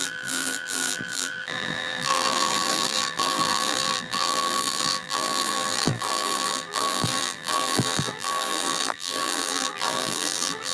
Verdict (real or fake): fake